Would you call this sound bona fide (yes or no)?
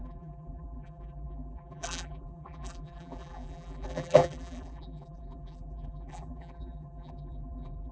no